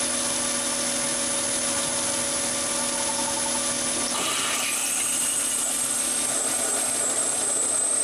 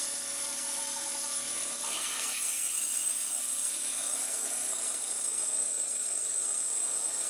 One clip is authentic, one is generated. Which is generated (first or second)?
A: second